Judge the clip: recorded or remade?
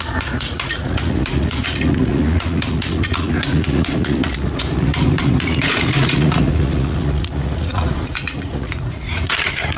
remade